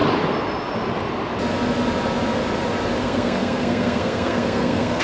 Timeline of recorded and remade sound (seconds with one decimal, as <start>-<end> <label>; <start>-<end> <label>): 0.0-3.0 recorded; 3.0-5.0 remade